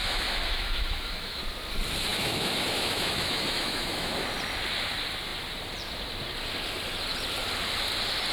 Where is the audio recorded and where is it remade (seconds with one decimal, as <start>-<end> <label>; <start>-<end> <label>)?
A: 0.0-1.4 remade; 1.4-2.1 recorded; 2.1-4.1 remade; 4.1-8.3 recorded